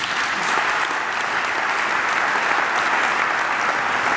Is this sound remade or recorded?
recorded